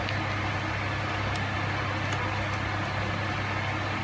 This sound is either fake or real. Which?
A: real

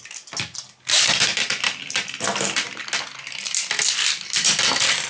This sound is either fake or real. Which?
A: real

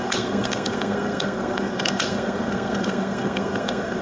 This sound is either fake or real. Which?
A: fake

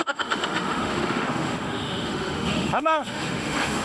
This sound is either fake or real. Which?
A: fake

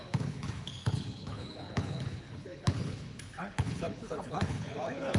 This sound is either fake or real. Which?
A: fake